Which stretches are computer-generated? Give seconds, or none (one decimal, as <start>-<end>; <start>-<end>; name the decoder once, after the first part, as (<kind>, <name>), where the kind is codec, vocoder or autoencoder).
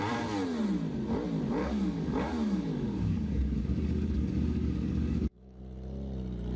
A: 1.6-5.6 (codec, DAC)